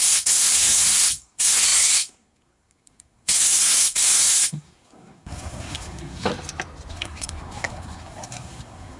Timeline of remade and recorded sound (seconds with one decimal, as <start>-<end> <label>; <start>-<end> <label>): 0.0-6.3 remade; 6.3-6.9 recorded; 6.9-9.0 remade